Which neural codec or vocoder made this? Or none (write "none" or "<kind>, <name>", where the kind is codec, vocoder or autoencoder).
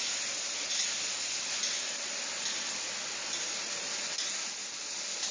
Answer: none